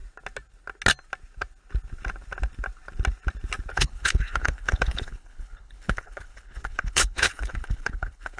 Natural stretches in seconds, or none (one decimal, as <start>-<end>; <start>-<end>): 0.0-3.7